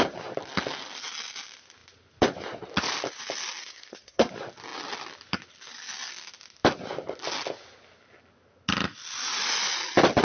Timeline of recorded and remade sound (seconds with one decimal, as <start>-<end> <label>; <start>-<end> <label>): 0.0-3.6 recorded; 3.6-4.3 remade; 4.3-10.2 recorded